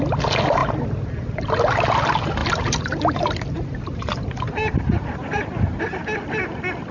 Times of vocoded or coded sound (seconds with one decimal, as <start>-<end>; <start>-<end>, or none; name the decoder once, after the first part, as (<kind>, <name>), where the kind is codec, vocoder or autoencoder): 2.4-5.8 (vocoder, BigVGAN v2)